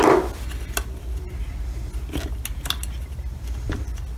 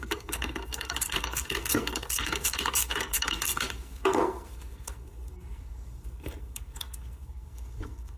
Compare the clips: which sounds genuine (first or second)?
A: first